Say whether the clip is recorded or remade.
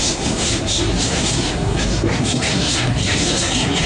remade